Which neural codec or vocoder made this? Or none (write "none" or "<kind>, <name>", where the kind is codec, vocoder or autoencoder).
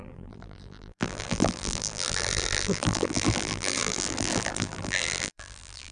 vocoder, BigVGAN v2